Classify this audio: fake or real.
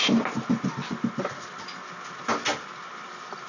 real